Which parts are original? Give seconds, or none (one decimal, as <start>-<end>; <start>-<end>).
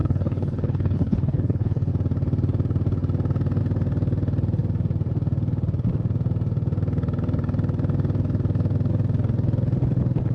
1.9-10.3